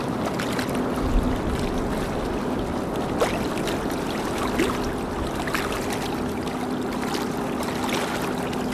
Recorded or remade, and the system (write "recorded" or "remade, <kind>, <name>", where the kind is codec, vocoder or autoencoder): recorded